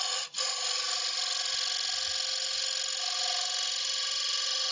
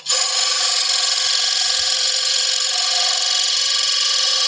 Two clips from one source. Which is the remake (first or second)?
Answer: second